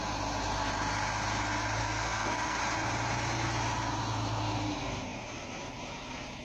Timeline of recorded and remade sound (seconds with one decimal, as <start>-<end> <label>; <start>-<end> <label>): 0.0-1.8 recorded; 1.8-2.6 remade; 2.6-6.4 recorded